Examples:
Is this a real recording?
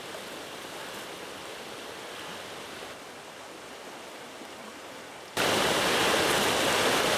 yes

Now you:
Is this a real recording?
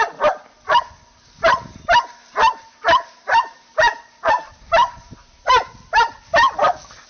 yes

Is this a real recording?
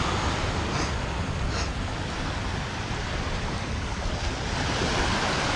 yes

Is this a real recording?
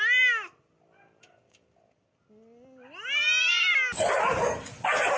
yes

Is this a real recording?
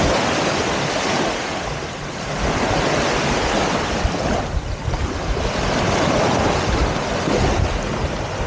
yes